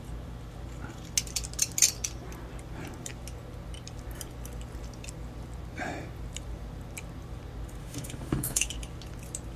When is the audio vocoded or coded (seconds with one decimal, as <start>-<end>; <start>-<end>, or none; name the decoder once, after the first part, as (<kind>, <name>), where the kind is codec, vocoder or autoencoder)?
7.8-8.7 (autoencoder, DAC-VAE)

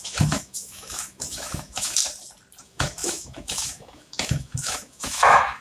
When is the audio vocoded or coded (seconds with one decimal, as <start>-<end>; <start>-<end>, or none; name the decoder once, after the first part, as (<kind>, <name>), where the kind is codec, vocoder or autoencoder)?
0.0-2.0 (autoencoder, DAC-VAE); 2.6-5.6

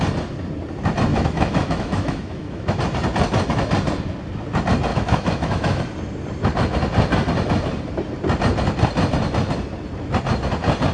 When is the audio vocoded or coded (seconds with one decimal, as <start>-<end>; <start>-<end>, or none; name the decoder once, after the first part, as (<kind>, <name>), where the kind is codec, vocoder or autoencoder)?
1.1-2.8 (autoencoder, DAC-VAE); 4.9-5.8

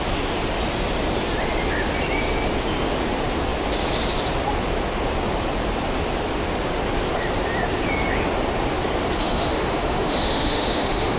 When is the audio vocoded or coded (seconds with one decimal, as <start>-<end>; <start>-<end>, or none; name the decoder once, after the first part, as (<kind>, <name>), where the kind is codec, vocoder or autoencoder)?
9.2-11.2 (autoencoder, DAC-VAE)

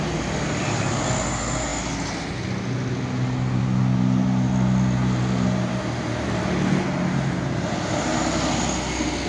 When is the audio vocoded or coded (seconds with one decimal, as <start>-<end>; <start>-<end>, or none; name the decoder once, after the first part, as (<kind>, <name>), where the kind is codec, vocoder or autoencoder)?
none